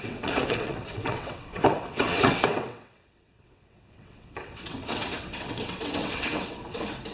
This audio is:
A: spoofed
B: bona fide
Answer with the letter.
A